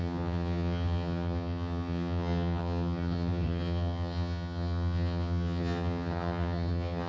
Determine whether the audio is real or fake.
fake